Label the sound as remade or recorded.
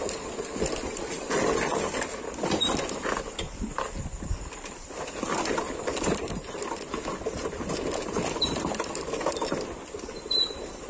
recorded